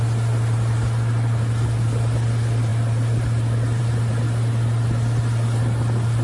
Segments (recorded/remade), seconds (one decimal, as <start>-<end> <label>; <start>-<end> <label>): 0.0-6.2 recorded